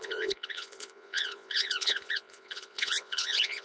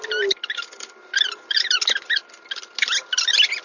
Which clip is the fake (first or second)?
first